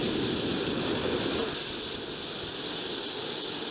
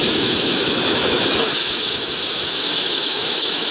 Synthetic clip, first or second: second